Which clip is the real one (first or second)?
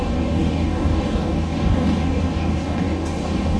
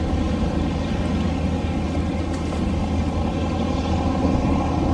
second